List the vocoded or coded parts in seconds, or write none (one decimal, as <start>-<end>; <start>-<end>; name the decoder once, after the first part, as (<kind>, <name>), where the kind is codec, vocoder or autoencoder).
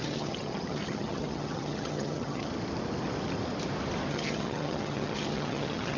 0.0-2.5 (vocoder, HiFi-GAN); 4.1-6.0